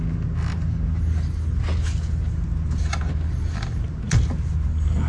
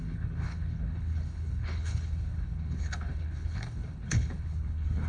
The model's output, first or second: second